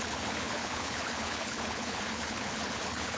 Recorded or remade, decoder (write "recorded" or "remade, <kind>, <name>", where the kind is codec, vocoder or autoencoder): remade, codec, HILCodec